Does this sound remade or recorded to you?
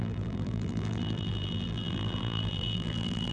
remade